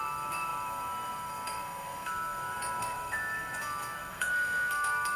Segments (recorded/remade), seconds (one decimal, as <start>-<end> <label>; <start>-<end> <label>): 0.0-5.2 remade